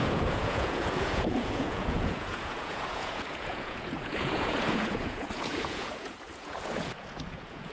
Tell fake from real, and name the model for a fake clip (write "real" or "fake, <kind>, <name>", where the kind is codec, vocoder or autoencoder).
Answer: fake, vocoder, Vocos